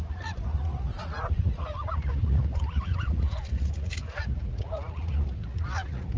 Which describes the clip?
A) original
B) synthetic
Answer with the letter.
B